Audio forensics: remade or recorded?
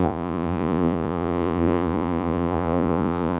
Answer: remade